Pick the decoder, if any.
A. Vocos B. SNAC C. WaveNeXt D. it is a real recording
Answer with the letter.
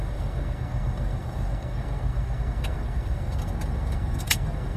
B